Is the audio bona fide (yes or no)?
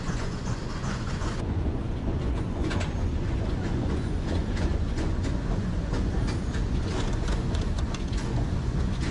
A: no